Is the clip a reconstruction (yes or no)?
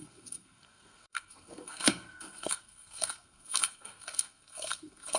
yes